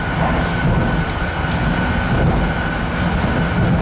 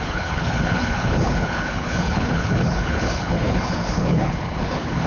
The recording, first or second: first